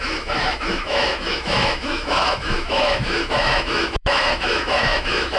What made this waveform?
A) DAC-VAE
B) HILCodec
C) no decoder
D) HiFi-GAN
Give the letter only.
A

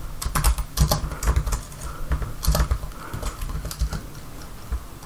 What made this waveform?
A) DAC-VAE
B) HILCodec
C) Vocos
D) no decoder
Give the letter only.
D